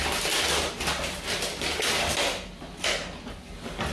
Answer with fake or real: real